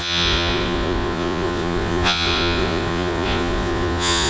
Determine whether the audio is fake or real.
fake